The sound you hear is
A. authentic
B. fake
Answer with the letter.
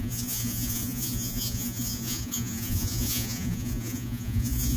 B